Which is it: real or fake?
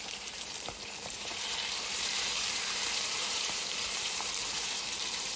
fake